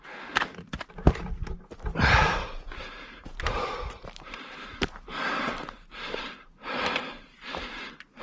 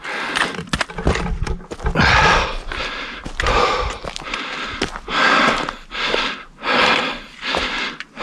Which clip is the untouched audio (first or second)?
second